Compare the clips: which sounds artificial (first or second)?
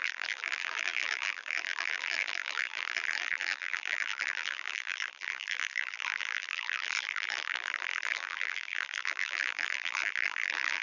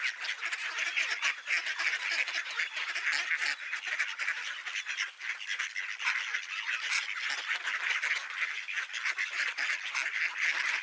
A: first